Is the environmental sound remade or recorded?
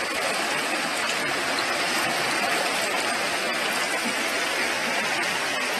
recorded